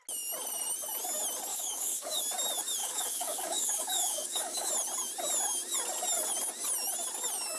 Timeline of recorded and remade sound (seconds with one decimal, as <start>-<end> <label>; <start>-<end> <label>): 0.0-1.5 recorded; 1.5-2.2 remade; 2.2-2.8 recorded; 2.8-4.7 remade; 4.7-7.6 recorded